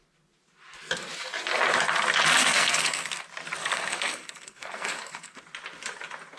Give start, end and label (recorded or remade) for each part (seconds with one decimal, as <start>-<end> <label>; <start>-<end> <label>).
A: 0.0-2.4 recorded; 2.4-3.2 remade; 3.2-3.6 recorded; 3.6-5.4 remade; 5.4-6.4 recorded